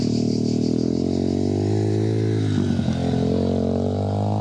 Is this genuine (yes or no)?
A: yes